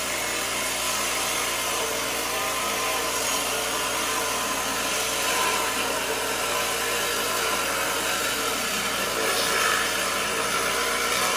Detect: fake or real real